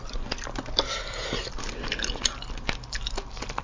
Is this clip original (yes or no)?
yes